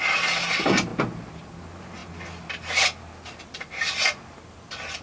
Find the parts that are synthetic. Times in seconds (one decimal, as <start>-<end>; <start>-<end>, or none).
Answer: none